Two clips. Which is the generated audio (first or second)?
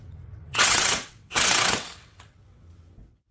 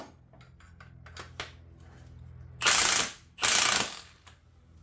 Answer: first